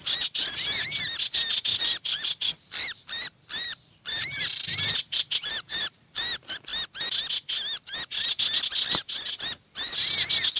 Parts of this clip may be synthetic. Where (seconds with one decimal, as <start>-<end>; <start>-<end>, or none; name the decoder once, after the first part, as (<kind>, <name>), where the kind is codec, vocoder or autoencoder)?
1.7-3.0 (vocoder, BigVGAN v2); 3.7-6.2